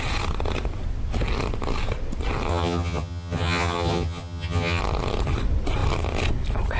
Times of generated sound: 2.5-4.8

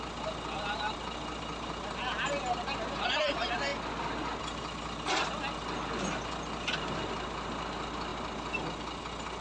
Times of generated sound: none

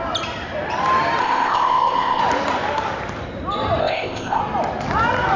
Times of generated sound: 1.2-2.2; 3.8-4.4

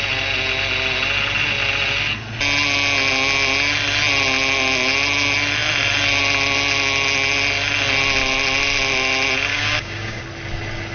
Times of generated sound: 9.5-10.2

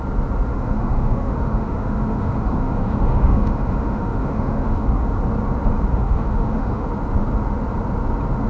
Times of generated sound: 0.5-5.2; 5.9-6.9

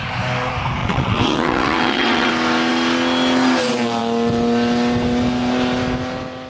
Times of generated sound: 0.8-2.3